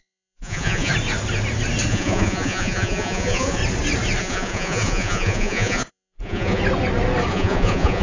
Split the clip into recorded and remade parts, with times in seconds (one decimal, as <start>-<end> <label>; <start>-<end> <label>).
0.0-0.9 remade; 0.9-1.9 recorded; 1.9-3.6 remade; 3.6-4.2 recorded; 4.2-6.6 remade; 6.6-7.3 recorded; 7.3-8.0 remade